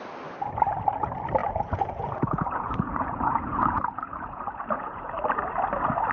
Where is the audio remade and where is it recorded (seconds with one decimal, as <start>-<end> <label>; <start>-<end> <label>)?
0.0-1.4 recorded; 1.4-5.1 remade; 5.1-6.1 recorded